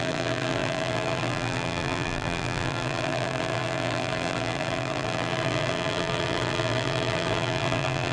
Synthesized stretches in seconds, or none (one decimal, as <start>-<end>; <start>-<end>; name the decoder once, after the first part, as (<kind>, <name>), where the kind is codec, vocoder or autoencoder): 0.0-8.1 (vocoder, BigVGAN v2)